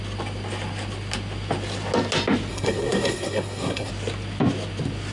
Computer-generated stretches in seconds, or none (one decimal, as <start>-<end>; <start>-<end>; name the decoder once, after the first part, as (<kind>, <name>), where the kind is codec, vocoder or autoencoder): 2.5-3.9 (codec, SNAC)